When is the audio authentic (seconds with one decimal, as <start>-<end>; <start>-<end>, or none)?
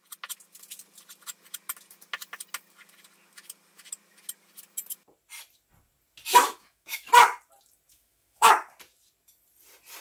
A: 0.0-6.3; 7.1-7.9; 8.5-10.0